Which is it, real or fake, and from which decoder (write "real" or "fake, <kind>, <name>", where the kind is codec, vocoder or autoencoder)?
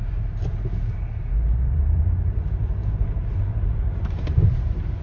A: fake, vocoder, BigVGAN v2